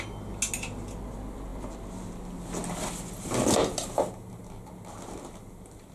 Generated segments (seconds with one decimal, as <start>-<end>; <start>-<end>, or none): 3.8-4.4